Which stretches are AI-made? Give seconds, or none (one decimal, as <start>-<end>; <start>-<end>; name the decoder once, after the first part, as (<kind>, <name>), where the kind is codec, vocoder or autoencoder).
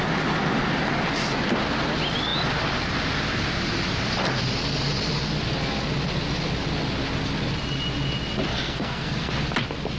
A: 8.5-9.3 (codec, SNAC)